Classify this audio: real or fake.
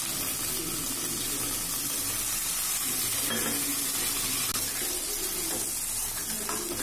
real